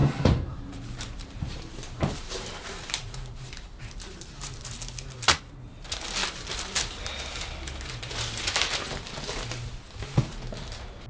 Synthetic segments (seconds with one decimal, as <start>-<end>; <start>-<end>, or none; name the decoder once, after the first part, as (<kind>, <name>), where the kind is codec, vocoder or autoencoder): 0.0-3.9 (vocoder, BigVGAN v2)